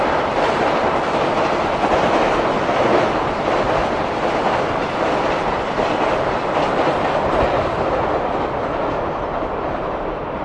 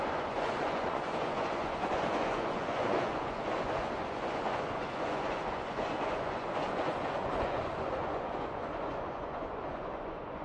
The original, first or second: first